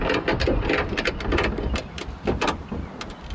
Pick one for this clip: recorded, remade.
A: recorded